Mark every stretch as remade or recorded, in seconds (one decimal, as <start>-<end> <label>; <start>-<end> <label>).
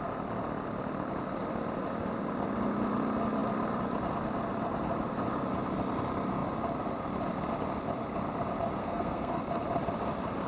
0.0-8.8 recorded; 8.8-9.4 remade; 9.4-10.5 recorded